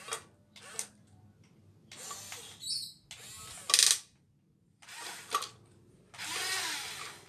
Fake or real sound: real